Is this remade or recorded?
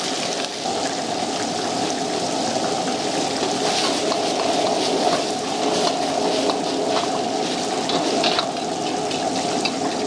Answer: recorded